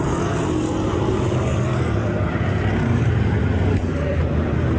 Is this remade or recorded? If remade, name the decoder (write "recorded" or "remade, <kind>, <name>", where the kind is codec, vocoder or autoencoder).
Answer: recorded